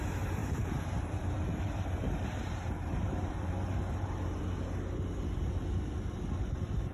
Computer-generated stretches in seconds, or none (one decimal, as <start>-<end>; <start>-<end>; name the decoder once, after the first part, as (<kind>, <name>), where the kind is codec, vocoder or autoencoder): 0.4-4.4 (vocoder, BigVGAN v2)